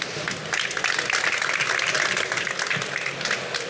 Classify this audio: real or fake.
real